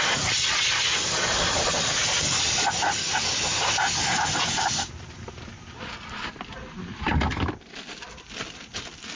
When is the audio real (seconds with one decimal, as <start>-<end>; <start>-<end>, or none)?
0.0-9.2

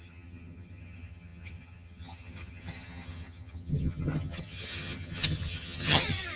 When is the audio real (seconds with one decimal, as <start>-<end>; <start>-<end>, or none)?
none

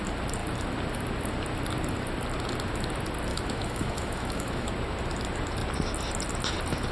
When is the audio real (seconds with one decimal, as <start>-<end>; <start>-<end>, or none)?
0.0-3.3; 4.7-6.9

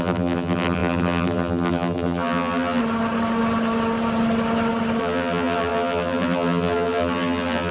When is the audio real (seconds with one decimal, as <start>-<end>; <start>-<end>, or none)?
2.8-5.0

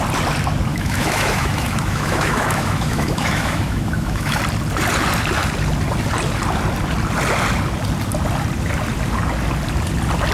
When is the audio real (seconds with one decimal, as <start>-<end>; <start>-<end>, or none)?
0.0-0.7; 4.4-10.3